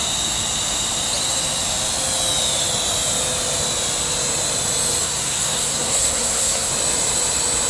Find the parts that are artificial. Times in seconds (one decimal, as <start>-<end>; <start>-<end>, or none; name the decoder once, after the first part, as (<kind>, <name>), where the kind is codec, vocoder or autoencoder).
5.0-6.7 (codec, SNAC)